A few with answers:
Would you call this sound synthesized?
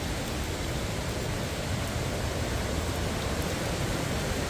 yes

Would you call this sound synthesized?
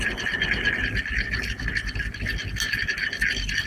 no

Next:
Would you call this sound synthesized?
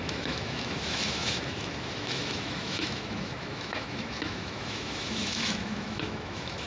yes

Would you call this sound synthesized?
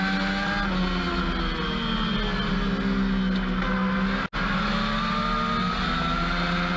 no